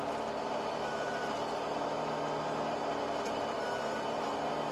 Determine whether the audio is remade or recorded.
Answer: recorded